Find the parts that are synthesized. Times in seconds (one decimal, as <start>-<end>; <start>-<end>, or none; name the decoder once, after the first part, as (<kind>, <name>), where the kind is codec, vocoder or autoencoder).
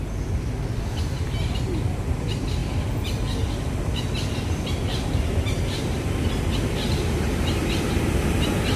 none